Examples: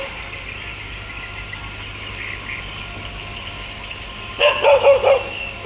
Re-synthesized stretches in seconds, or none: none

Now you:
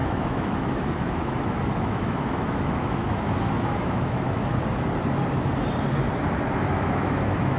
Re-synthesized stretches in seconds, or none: 0.0-4.5; 6.6-7.6